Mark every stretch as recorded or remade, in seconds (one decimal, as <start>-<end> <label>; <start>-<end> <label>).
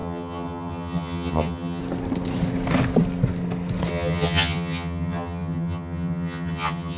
0.0-1.8 remade; 1.8-3.9 recorded; 3.9-7.0 remade